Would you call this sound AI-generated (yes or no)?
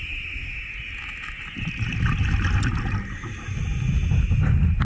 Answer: no